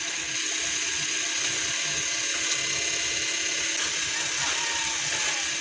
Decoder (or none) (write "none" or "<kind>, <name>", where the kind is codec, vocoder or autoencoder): none